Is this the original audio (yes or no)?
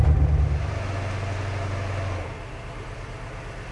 yes